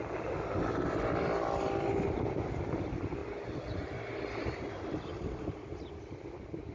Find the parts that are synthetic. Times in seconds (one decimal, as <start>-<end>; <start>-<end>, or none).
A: none